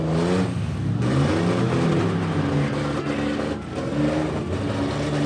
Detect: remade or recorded recorded